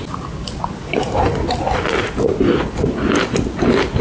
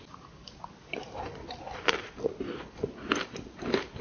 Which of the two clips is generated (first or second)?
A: second